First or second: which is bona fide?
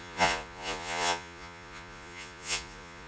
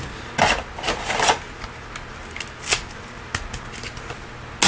second